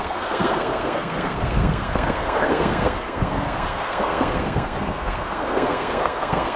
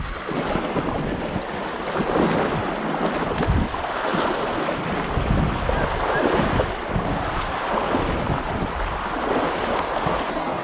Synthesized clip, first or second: first